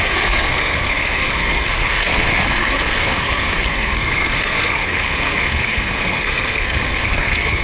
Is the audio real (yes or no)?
no